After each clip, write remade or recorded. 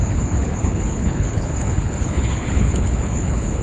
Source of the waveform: remade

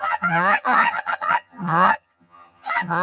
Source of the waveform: remade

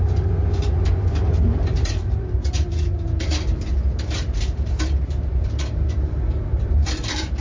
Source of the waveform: remade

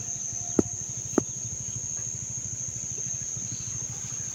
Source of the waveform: recorded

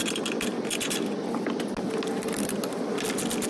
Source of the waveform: recorded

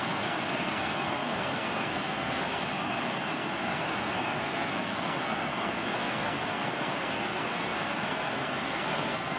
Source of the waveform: remade